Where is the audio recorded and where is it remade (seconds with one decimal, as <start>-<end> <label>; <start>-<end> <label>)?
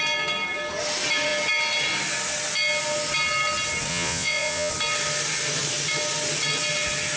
0.0-3.9 recorded; 3.9-4.7 remade; 4.7-7.2 recorded